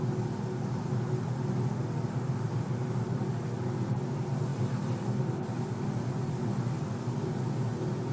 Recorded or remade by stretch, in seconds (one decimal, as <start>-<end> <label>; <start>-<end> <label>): 0.0-8.1 recorded